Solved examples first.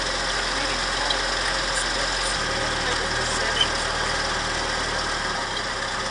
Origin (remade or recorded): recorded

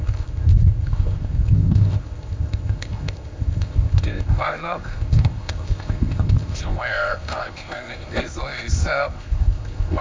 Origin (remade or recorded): remade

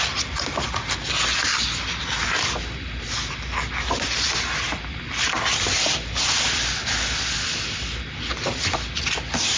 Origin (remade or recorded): recorded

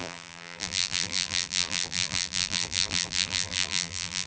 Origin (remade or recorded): remade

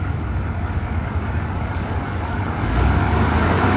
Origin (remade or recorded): remade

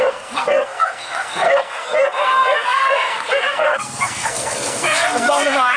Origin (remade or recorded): remade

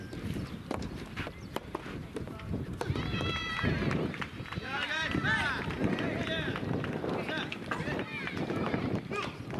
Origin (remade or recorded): remade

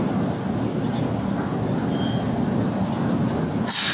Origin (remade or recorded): recorded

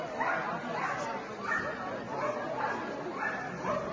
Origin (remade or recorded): recorded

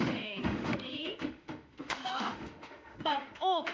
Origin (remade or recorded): remade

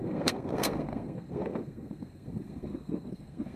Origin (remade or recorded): remade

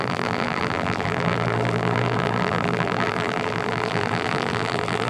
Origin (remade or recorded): remade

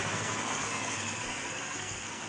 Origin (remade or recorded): remade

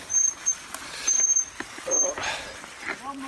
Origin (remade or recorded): recorded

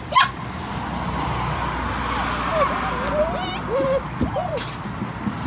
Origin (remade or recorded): recorded